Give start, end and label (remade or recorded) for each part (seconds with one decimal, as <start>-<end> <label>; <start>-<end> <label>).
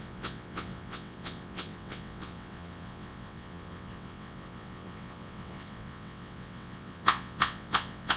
0.0-8.2 remade